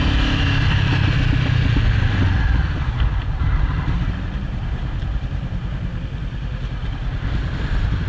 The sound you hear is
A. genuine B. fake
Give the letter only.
A